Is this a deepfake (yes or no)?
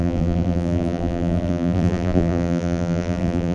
yes